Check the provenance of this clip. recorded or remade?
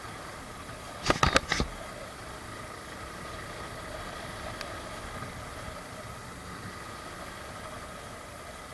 recorded